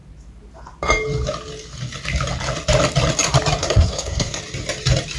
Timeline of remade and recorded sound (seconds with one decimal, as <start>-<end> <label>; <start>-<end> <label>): 0.0-3.6 recorded; 3.6-4.4 remade; 4.4-5.2 recorded